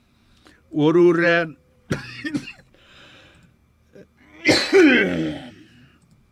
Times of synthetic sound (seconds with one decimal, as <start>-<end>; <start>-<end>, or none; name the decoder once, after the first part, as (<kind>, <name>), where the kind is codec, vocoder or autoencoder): 0.0-3.6 (vocoder, BigVGAN v2); 5.5-6.3